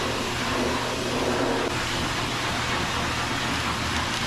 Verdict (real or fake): real